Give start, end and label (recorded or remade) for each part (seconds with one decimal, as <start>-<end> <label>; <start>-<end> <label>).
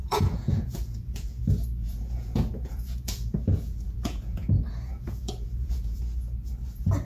0.0-1.4 remade; 1.4-1.8 recorded; 1.8-6.0 remade; 6.0-7.0 recorded